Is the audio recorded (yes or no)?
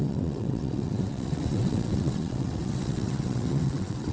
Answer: no